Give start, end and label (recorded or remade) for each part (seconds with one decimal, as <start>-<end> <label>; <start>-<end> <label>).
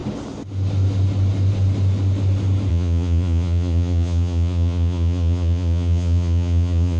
0.0-2.7 recorded; 2.7-7.0 remade